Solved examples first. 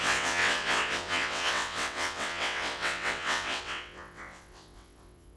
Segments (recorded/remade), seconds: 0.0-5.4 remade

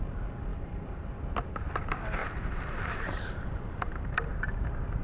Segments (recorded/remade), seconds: 0.0-0.5 recorded; 0.5-1.1 remade; 1.1-2.2 recorded; 2.2-4.3 remade; 4.3-5.0 recorded

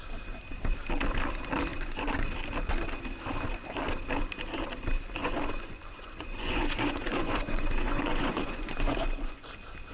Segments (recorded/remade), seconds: 0.0-1.7 recorded; 1.7-2.3 remade; 2.3-5.2 recorded; 5.2-9.5 remade; 9.5-9.9 recorded

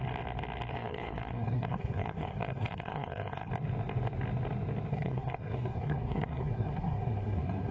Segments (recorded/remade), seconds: 0.0-0.7 recorded; 0.7-3.5 remade; 3.5-4.9 recorded; 4.9-7.7 remade

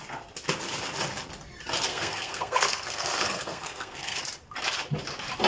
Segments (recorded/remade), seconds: 0.0-1.9 recorded; 1.9-4.2 remade; 4.2-5.5 recorded

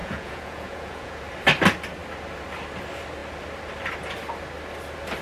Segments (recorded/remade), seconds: 0.0-1.2 remade; 1.2-5.2 recorded